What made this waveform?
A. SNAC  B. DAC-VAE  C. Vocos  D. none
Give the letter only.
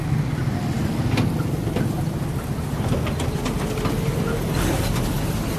D